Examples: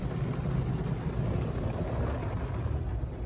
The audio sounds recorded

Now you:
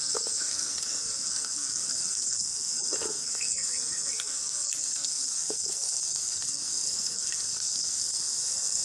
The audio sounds remade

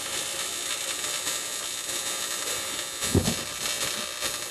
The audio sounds recorded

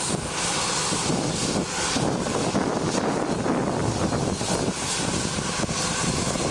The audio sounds recorded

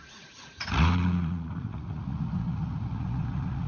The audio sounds remade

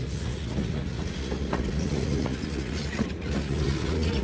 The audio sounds remade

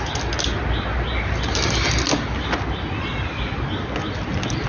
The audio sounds recorded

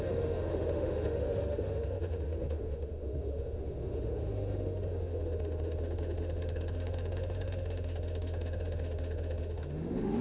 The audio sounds remade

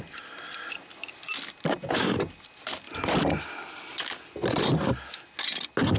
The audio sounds recorded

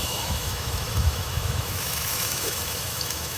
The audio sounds remade